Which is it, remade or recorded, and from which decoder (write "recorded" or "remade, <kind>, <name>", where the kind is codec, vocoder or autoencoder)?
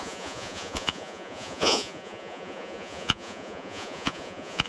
remade, vocoder, Vocos